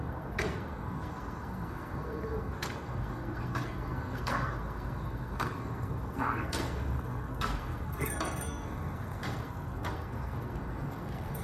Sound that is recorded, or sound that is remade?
remade